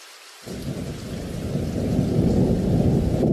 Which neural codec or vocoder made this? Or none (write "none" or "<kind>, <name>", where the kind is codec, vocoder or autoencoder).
none